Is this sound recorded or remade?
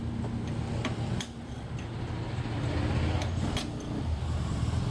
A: recorded